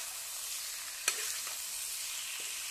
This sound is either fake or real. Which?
real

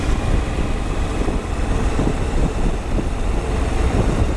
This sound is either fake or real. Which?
real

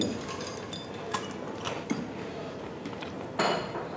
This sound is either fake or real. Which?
real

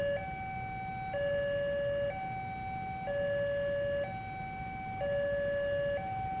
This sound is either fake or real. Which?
real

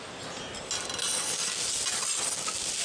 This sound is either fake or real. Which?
real